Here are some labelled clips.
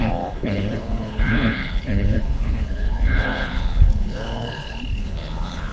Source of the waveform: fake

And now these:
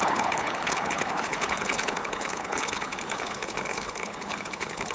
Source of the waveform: fake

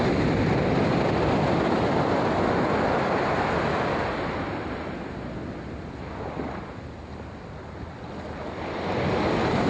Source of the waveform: real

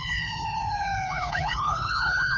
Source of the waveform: fake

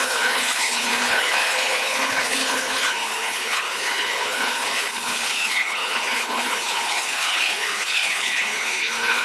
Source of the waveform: fake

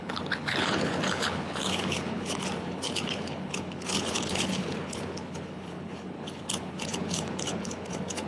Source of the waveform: fake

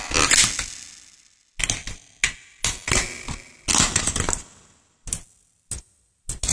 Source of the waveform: real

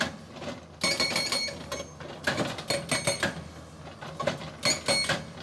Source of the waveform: real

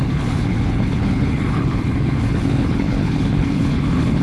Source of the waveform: fake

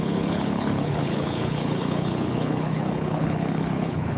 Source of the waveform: fake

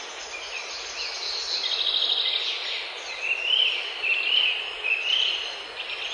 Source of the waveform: real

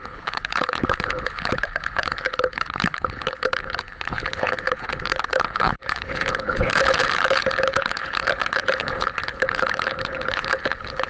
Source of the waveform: fake